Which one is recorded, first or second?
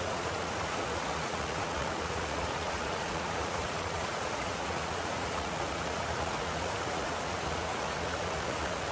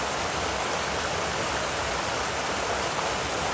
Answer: second